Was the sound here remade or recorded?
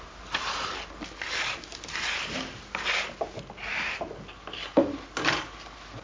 recorded